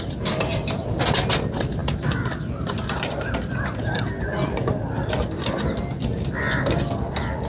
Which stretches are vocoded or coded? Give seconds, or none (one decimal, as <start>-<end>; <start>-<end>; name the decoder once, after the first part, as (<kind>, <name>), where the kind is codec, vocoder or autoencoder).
none